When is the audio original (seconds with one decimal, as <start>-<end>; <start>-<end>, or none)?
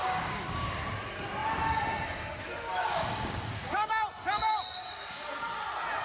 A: 0.8-2.7; 3.9-6.0